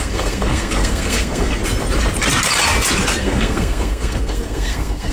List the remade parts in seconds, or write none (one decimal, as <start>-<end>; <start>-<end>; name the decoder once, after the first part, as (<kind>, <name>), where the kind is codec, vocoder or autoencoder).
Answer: 0.0-1.6 (codec, SNAC); 3.2-5.1